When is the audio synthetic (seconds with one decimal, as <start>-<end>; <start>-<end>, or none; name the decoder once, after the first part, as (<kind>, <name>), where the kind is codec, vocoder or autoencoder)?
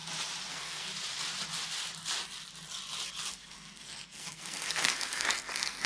0.5-0.9 (codec, SNAC); 3.3-5.9